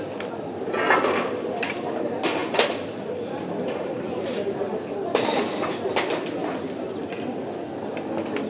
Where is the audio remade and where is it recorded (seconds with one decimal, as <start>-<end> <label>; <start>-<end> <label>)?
0.0-8.5 recorded